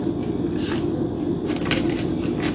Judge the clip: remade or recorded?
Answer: recorded